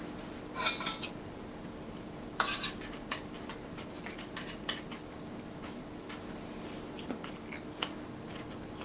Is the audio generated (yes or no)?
no